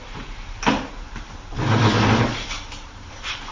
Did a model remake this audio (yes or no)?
yes